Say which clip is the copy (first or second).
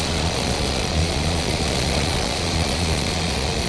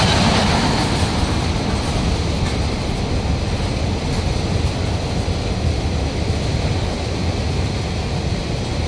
first